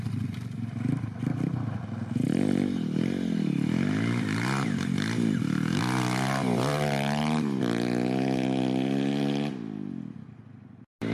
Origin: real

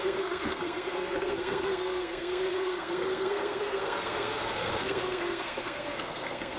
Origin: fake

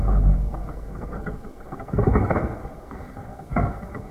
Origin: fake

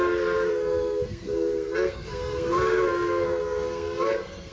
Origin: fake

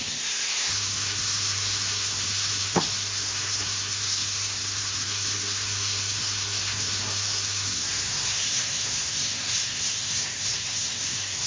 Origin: fake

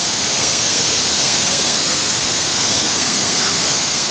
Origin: fake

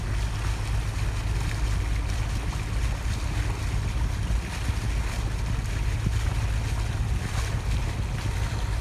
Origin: real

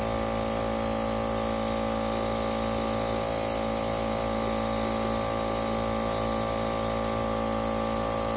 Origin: real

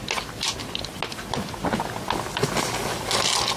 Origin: real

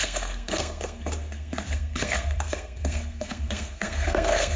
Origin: fake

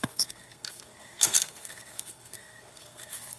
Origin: fake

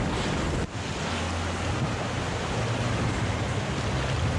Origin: real